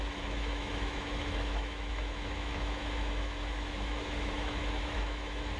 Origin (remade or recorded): remade